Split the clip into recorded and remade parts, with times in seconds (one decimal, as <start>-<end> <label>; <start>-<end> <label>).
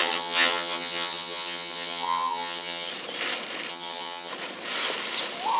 0.0-2.9 remade; 2.9-3.7 recorded; 3.7-4.3 remade; 4.3-5.6 recorded